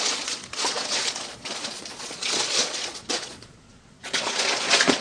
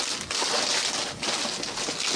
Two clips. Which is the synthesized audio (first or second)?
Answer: first